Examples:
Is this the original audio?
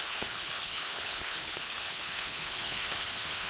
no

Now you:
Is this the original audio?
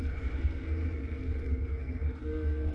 no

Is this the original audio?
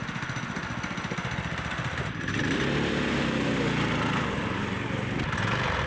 yes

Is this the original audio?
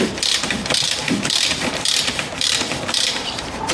no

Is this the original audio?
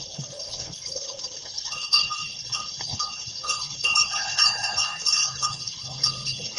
no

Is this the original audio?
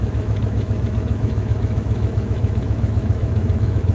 no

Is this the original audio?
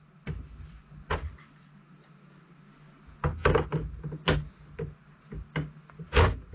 yes